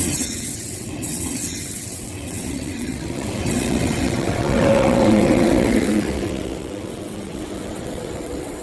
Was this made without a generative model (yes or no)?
no